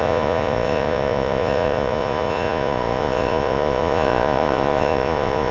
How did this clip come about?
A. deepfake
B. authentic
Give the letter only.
A